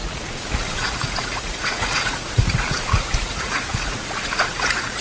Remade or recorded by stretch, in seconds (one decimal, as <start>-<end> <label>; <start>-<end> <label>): 0.0-5.0 remade